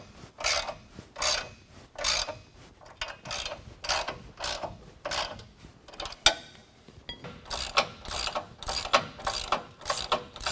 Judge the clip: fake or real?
real